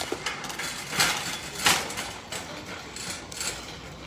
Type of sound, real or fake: real